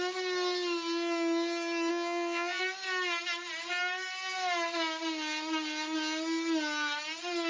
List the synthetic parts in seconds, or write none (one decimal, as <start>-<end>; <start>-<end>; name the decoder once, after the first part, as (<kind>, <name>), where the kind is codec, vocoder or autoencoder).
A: 1.9-2.6 (vocoder, HiFi-GAN)

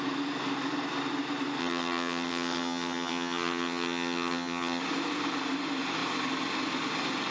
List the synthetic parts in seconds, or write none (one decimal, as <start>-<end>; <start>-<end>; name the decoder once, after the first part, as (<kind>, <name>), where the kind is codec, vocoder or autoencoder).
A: 1.6-4.8 (vocoder, HiFi-GAN)

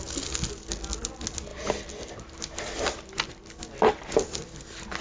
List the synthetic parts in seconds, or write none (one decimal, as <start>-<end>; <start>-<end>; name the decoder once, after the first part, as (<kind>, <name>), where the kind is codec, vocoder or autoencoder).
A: none

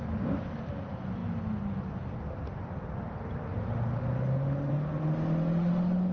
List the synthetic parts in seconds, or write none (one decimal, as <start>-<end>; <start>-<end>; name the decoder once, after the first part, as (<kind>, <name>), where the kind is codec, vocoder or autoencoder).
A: none

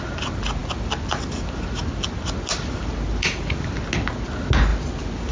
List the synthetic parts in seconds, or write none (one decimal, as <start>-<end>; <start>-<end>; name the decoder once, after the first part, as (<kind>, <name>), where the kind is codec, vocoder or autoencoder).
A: none

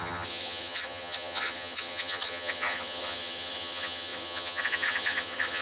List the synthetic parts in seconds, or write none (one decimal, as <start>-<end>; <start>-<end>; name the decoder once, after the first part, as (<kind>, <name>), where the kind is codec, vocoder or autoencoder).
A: 0.0-5.6 (vocoder, HiFi-GAN)